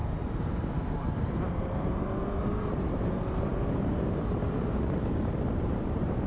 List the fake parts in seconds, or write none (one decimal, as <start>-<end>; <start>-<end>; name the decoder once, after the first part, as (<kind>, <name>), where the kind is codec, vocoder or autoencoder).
0.0-6.3 (vocoder, BigVGAN v2)